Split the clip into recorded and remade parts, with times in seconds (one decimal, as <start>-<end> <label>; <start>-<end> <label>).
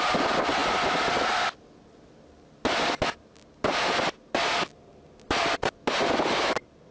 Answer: 0.0-6.9 recorded